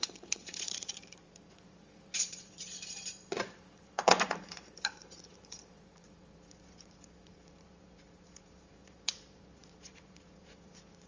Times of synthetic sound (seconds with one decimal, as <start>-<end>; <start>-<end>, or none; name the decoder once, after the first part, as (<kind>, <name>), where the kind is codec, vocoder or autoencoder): 0.0-11.1 (vocoder, Vocos)